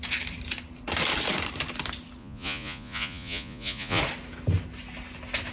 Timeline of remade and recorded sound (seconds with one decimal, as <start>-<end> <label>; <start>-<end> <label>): 0.0-2.2 recorded; 2.2-4.0 remade; 4.0-5.5 recorded